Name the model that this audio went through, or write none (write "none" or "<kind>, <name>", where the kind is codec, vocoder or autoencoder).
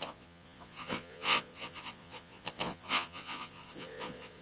vocoder, Vocos